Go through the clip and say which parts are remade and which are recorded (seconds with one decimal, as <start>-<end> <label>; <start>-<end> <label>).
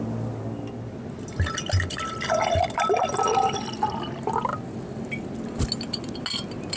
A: 0.0-6.8 recorded